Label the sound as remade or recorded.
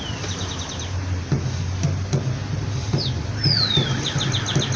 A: recorded